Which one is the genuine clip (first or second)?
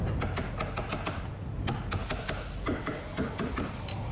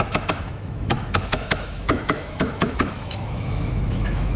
first